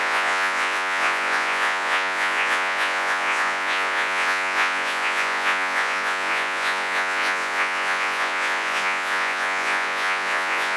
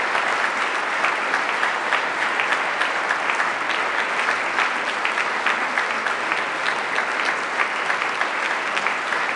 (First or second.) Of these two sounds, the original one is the second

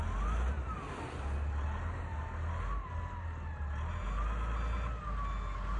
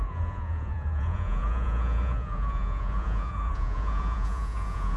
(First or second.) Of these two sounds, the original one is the first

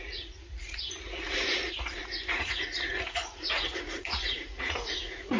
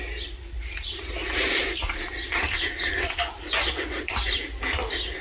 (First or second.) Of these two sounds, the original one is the second